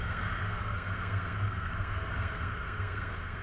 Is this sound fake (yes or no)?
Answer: yes